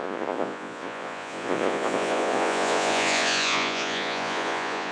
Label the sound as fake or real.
fake